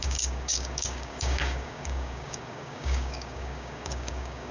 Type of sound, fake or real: fake